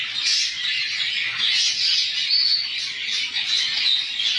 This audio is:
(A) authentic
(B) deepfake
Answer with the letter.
A